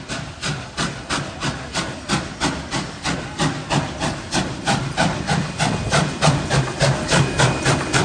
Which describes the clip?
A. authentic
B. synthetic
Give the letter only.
A